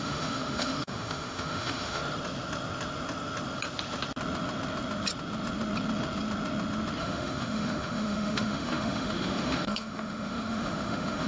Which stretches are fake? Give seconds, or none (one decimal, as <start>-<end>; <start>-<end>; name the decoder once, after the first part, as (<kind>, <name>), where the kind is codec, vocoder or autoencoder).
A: 0.0-2.0 (autoencoder, DAC-VAE); 7.0-11.3